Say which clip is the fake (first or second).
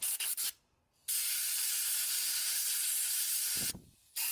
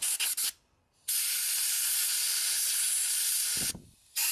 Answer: first